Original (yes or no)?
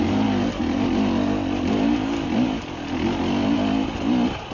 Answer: yes